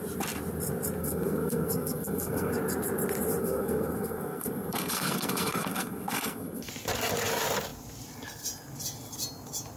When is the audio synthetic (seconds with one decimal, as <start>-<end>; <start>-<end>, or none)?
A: 1.0-2.5; 3.4-6.7